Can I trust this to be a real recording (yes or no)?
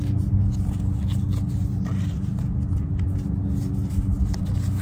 yes